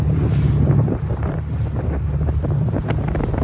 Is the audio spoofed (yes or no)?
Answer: yes